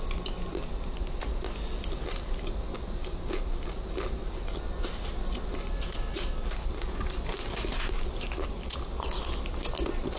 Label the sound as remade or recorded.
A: recorded